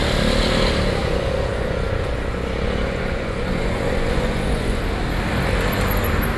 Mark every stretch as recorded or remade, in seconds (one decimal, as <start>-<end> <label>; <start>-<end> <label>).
0.0-1.0 recorded; 1.0-4.8 remade; 4.8-6.4 recorded